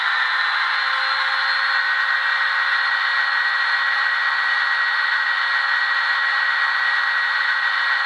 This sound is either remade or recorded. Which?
recorded